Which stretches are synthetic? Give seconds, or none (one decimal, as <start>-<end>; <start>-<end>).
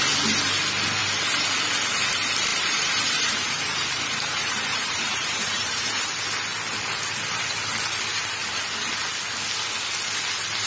1.0-1.7; 2.5-6.1